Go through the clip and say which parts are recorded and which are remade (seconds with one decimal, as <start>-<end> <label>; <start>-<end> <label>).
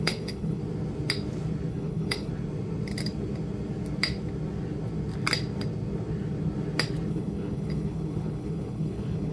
0.0-0.6 remade; 0.6-1.7 recorded; 1.7-2.3 remade; 2.3-7.1 recorded; 7.1-9.3 remade